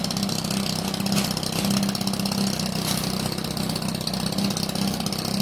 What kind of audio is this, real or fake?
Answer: real